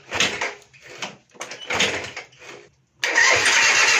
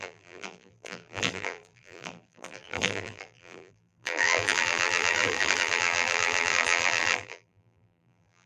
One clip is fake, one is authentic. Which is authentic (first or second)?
first